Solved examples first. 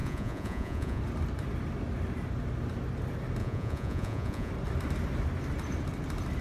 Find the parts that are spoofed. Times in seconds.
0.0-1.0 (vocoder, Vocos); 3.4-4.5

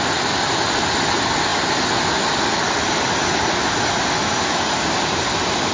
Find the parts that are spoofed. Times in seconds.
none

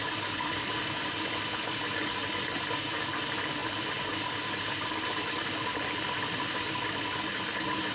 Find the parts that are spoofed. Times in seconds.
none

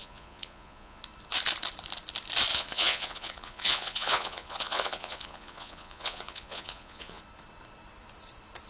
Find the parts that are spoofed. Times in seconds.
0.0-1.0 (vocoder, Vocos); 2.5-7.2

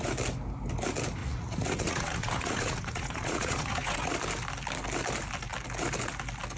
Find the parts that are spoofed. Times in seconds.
1.2-4.1 (vocoder, Vocos)